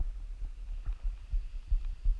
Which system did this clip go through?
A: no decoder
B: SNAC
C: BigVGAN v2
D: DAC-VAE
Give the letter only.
A